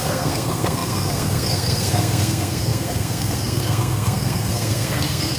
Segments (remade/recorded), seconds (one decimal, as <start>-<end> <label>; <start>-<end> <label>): 0.0-5.4 remade